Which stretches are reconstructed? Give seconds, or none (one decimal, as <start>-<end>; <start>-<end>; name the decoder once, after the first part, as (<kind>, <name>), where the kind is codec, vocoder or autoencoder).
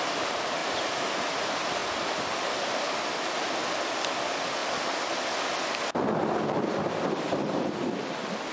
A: 0.6-1.4 (vocoder, BigVGAN v2); 1.8-2.6